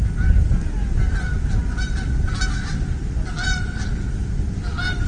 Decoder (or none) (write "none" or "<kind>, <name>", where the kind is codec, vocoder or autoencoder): none